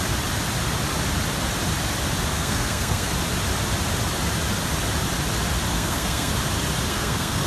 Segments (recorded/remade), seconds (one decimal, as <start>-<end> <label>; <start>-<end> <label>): 0.0-2.3 recorded; 2.3-3.1 remade; 3.1-5.7 recorded; 5.7-6.3 remade; 6.3-6.9 recorded; 6.9-7.5 remade